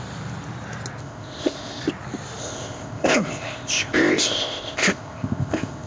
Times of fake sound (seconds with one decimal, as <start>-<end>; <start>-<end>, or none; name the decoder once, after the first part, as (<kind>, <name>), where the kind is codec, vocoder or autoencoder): 1.0-1.8 (codec, ZipCodec); 2.4-5.9